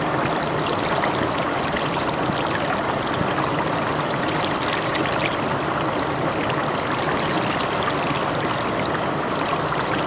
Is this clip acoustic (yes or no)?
yes